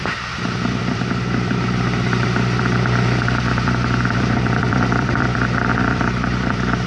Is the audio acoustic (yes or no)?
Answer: no